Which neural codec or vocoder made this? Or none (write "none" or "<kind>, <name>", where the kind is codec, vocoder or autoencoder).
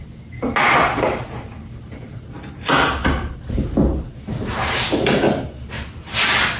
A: none